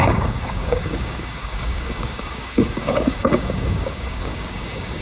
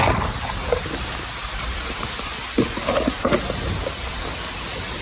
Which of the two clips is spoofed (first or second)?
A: first